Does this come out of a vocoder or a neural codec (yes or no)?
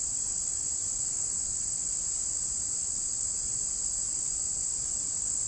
no